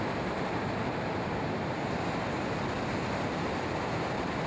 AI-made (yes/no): no